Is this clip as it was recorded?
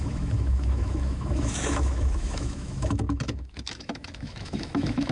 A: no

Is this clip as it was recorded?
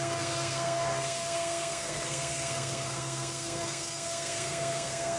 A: no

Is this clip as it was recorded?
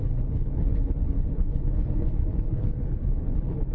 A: no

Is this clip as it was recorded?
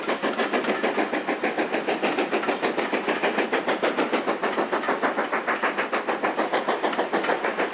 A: yes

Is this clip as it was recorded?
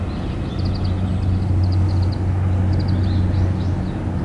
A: yes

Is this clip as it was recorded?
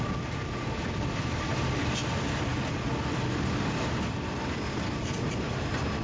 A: yes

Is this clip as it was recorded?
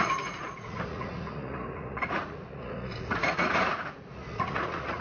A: no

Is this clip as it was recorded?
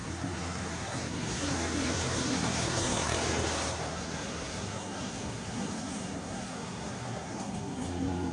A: no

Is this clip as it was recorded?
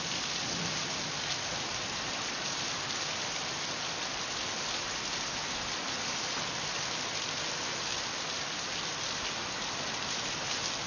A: yes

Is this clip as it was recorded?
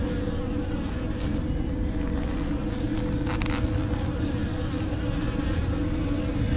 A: yes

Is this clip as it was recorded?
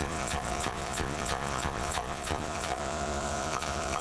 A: no